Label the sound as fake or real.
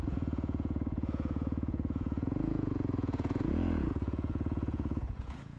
fake